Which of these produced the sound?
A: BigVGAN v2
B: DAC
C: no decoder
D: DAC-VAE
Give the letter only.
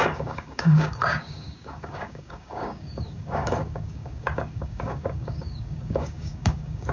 B